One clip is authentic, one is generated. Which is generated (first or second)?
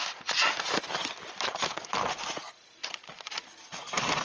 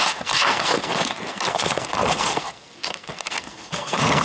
second